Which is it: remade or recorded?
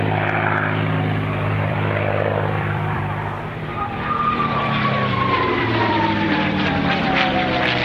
remade